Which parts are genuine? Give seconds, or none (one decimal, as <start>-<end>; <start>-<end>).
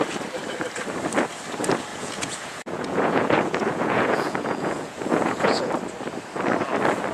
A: 0.0-1.9; 5.7-7.1